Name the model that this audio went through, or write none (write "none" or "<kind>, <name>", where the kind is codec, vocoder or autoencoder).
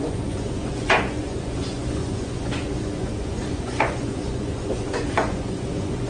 vocoder, Vocos